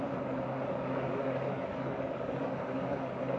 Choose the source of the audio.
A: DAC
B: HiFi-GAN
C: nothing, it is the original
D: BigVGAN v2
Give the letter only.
A